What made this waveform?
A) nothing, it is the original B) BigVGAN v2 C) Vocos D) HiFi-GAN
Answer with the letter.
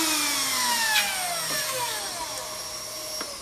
A